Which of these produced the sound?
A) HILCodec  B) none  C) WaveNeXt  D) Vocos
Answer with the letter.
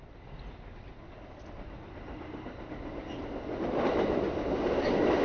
B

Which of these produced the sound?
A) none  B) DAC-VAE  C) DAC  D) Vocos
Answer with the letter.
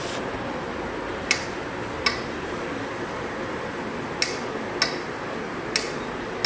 A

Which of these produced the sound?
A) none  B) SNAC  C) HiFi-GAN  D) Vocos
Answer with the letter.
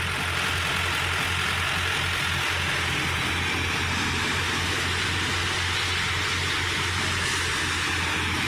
A